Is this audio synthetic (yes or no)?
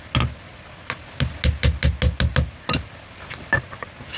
no